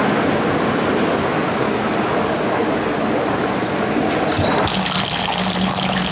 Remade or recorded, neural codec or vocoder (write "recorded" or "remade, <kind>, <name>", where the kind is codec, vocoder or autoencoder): recorded